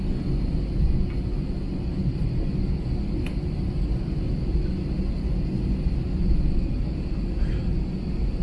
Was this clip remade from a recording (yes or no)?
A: no